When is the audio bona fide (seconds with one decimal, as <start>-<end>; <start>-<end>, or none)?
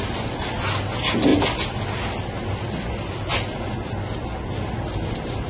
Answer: 0.0-5.5